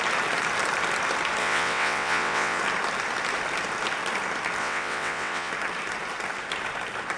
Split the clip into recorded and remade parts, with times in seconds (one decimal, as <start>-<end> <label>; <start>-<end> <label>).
0.0-1.4 recorded; 1.4-2.6 remade; 2.6-4.6 recorded; 4.6-5.5 remade; 5.5-7.2 recorded